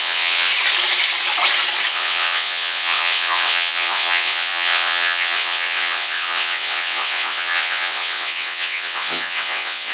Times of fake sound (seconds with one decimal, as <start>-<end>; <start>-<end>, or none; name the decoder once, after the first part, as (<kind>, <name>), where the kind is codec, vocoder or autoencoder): 0.0-0.5 (vocoder, WaveNeXt); 1.9-9.9